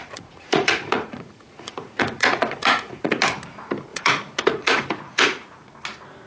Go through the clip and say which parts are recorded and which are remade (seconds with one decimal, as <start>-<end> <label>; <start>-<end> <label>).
0.0-3.2 remade; 3.2-3.9 recorded; 3.9-5.7 remade; 5.7-6.3 recorded